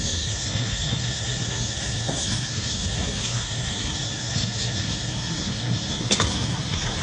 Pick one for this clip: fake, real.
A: fake